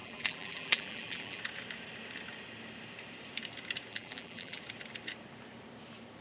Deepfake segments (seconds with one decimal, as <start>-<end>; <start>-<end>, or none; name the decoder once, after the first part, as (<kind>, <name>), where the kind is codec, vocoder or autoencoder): 0.0-1.4 (vocoder, BigVGAN v2); 3.9-4.6

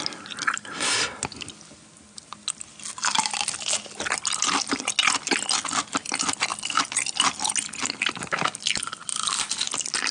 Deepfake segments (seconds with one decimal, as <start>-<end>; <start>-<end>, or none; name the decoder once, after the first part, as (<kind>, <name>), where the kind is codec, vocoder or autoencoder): 9.1-9.7 (vocoder, BigVGAN v2)

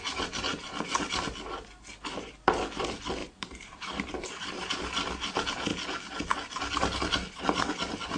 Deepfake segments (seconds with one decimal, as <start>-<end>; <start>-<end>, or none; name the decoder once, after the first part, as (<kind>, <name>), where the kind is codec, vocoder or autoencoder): 3.2-4.7 (vocoder, BigVGAN v2)

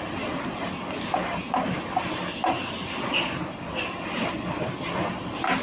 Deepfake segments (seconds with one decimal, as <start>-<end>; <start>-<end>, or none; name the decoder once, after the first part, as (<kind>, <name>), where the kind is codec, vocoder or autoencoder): 1.2-1.7 (vocoder, BigVGAN v2)